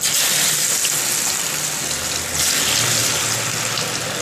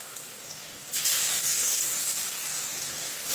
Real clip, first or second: first